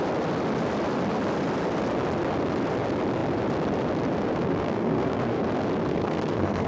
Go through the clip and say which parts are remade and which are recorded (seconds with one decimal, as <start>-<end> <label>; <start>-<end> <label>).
0.0-4.4 recorded; 4.4-5.4 remade; 5.4-5.9 recorded; 5.9-6.7 remade